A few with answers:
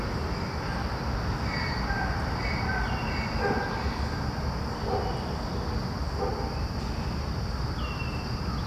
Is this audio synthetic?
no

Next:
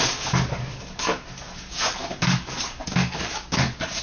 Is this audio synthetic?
yes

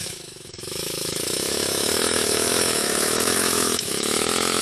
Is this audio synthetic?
yes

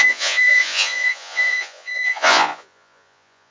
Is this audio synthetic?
yes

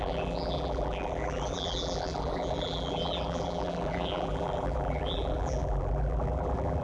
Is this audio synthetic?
yes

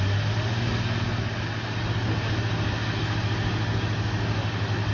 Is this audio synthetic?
no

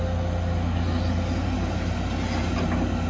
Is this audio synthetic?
no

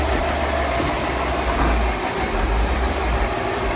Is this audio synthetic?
no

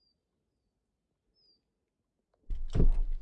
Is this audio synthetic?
no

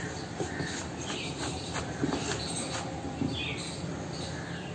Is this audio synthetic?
no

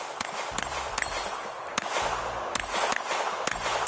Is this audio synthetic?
no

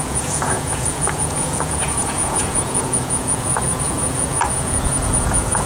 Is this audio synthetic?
yes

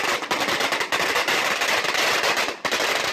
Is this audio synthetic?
no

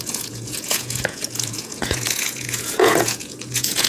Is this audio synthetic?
yes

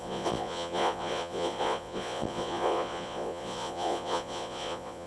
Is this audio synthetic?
yes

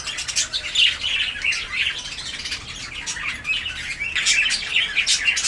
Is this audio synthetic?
no